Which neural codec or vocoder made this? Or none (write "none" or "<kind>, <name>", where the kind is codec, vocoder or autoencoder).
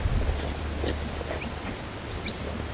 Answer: none